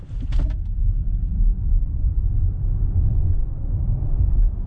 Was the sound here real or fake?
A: fake